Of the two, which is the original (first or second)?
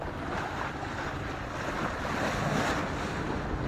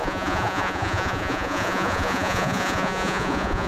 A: first